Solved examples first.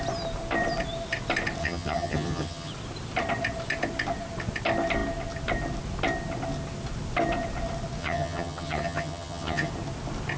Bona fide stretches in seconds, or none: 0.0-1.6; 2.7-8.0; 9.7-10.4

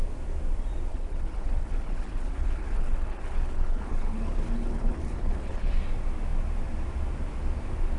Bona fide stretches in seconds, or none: 0.0-0.9; 5.7-8.0